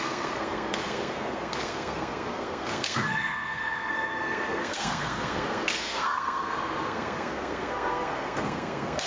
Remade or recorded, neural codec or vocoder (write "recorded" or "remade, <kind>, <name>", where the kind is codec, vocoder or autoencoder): remade, codec, SNAC